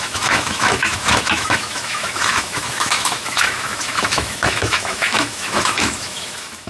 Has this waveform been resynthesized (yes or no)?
yes